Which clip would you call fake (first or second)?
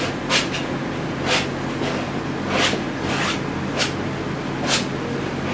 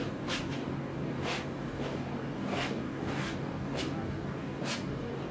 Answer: second